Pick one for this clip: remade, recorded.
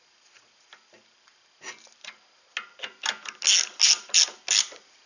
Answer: recorded